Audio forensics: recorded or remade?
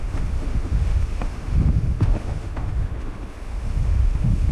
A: remade